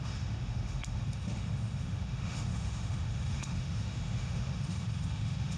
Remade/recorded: remade